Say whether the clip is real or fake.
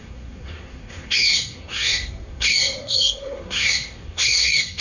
fake